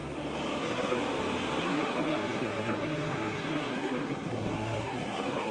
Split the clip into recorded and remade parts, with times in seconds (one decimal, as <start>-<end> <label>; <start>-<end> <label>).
0.0-0.6 recorded; 0.6-1.0 remade; 1.0-1.6 recorded; 1.6-5.5 remade